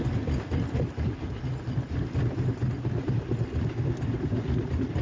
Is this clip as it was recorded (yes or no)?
yes